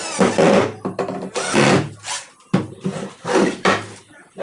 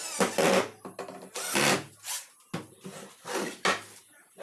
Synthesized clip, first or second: first